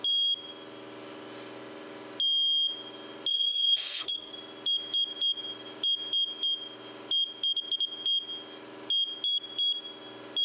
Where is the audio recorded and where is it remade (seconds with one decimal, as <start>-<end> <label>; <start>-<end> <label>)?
0.0-3.3 recorded; 3.3-4.3 remade; 4.3-10.4 recorded